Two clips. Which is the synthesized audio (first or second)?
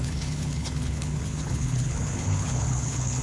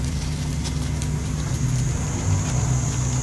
first